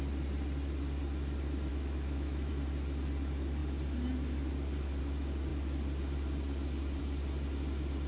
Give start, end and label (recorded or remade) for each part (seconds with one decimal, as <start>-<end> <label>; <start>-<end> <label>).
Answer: 0.0-1.7 recorded; 1.7-2.5 remade; 2.5-8.1 recorded